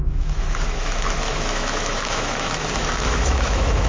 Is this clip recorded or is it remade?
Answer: remade